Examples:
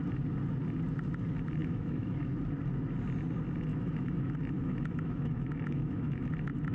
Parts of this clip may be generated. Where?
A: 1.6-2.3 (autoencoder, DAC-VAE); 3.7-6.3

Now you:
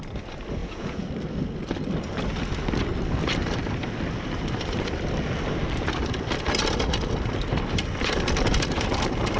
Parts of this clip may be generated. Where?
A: 0.6-1.1 (vocoder, Vocos)